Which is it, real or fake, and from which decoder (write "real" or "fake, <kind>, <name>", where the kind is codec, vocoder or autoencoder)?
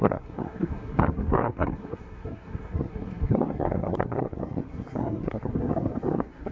fake, codec, SNAC